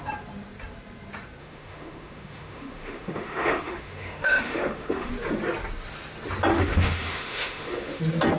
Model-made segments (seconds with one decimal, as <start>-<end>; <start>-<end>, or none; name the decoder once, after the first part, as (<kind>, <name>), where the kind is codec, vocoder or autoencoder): 1.4-5.1 (autoencoder, DAC-VAE); 6.5-8.0